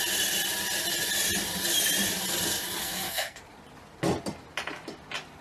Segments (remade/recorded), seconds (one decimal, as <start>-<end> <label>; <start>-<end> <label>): 0.0-2.8 recorded; 2.8-3.4 remade; 3.4-5.4 recorded